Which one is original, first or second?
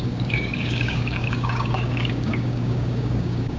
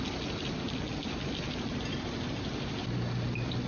second